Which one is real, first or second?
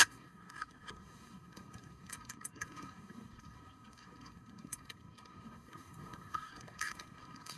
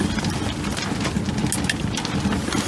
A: second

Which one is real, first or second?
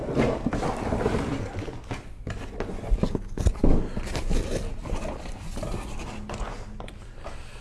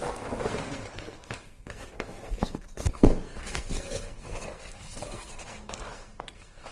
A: first